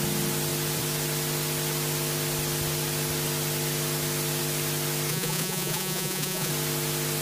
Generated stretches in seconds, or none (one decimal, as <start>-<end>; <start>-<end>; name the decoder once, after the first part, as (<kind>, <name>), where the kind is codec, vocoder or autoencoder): 5.1-6.5 (vocoder, Vocos)